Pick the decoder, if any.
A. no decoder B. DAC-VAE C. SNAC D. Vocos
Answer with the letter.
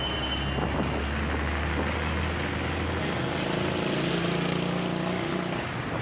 A